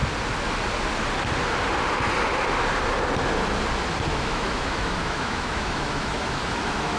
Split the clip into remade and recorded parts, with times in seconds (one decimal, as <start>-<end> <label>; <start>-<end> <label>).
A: 0.0-4.2 recorded; 4.2-7.0 remade